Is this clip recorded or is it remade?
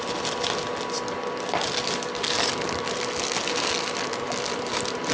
recorded